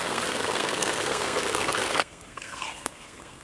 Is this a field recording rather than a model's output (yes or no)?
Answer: no